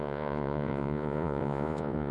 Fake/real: fake